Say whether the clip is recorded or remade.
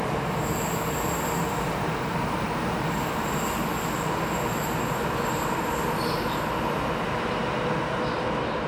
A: recorded